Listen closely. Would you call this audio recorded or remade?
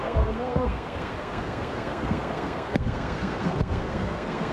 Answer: remade